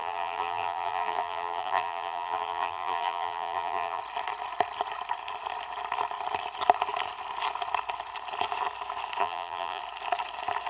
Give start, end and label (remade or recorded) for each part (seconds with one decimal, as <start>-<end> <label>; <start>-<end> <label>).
0.0-4.0 remade; 4.0-9.2 recorded; 9.2-9.8 remade; 9.8-10.7 recorded